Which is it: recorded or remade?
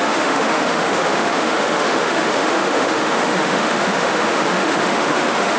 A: remade